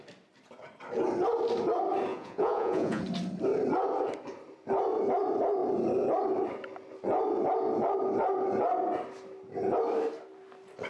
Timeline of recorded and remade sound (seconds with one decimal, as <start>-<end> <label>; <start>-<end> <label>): 0.0-2.1 recorded; 2.1-3.0 remade; 3.0-10.9 recorded